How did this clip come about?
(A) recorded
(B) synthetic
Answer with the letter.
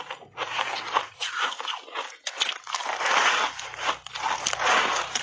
A